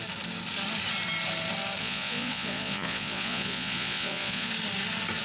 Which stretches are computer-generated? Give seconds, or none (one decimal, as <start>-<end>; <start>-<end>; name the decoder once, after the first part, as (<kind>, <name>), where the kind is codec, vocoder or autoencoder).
1.8-4.5 (vocoder, Vocos)